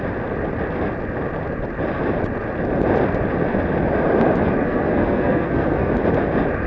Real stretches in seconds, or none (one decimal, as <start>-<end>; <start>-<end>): 0.0-4.6; 5.9-6.7